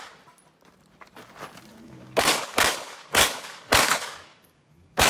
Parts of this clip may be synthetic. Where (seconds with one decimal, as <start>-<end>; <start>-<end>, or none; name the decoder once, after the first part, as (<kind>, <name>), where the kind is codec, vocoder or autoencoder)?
1.7-5.1 (codec, DAC)